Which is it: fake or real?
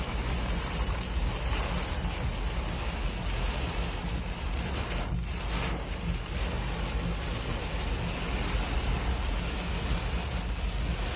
real